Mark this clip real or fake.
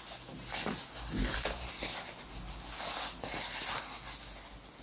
real